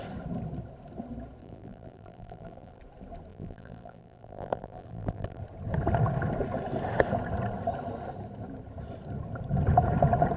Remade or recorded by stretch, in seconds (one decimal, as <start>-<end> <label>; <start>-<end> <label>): 0.0-1.4 recorded; 1.4-2.8 remade; 2.8-3.3 recorded; 3.3-5.4 remade; 5.4-10.4 recorded